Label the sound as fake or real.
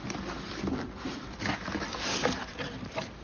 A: real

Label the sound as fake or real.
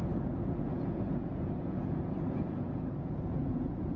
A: fake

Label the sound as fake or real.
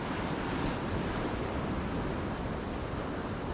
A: real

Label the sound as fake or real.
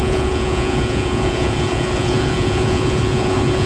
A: fake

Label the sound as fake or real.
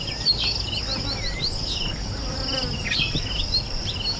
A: real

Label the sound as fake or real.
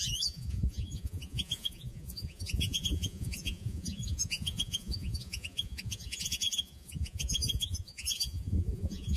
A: fake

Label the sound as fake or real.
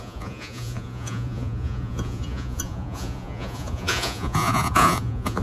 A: fake